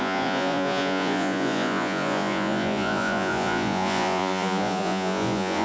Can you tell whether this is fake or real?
fake